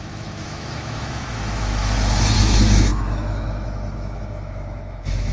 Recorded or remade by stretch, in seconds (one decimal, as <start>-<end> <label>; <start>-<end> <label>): 0.0-1.7 remade; 1.7-2.4 recorded; 2.4-5.3 remade